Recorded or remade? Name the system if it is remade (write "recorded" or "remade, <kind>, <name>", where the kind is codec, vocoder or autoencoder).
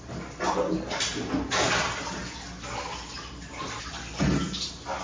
recorded